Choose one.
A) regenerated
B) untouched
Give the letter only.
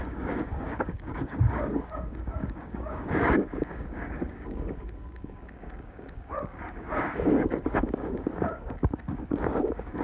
A